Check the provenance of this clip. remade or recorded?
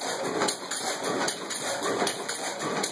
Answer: remade